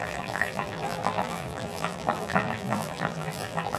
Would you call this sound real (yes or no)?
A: no